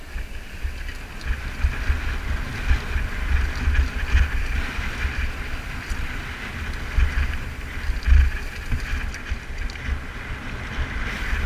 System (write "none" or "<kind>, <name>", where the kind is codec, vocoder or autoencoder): none